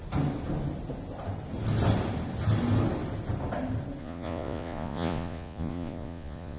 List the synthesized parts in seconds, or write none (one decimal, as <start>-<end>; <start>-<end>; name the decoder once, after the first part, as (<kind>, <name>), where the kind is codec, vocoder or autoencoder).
4.0-6.6 (vocoder, Vocos)